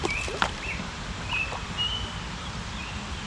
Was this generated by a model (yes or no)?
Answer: yes